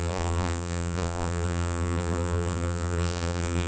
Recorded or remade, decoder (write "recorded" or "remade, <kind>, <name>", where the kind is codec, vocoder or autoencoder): remade, vocoder, BigVGAN v2